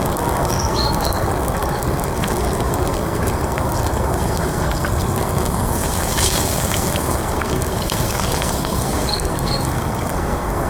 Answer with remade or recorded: remade